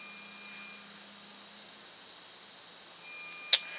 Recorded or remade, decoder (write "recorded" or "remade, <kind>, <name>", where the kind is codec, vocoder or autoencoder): recorded